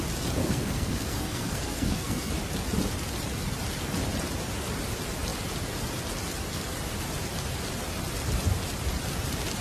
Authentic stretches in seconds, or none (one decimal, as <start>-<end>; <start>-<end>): 0.0-0.4; 2.3-9.6